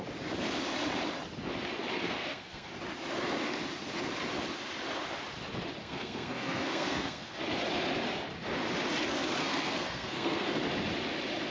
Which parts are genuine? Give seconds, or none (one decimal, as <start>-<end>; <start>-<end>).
0.0-2.0; 2.7-5.8; 7.4-9.4; 10.6-11.5